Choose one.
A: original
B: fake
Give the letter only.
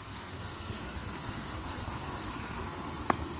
B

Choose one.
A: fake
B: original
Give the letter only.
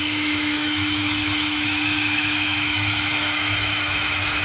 A